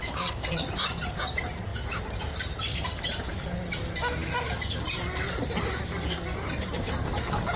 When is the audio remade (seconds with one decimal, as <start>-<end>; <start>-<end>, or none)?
2.7-3.4